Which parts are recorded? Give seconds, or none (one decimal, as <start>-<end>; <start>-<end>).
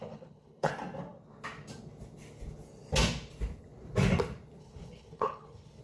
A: 0.7-4.6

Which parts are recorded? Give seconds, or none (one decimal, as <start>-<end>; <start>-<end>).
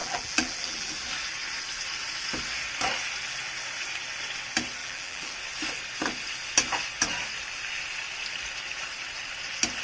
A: 0.9-4.8; 5.3-9.8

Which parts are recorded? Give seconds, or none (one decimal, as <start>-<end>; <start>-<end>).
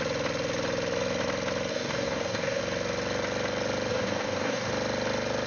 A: 0.0-1.7; 2.6-3.9; 4.7-5.5